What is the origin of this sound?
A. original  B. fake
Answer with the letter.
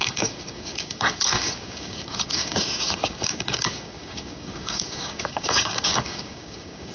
B